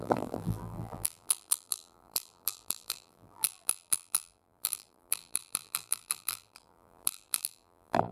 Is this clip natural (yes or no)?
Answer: no